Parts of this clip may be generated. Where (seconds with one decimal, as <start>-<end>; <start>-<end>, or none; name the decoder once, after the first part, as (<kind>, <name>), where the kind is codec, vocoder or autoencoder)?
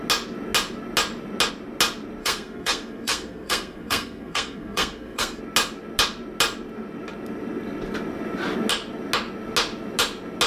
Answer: 2.2-5.4 (codec, SNAC)